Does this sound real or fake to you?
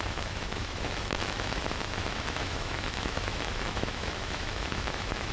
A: fake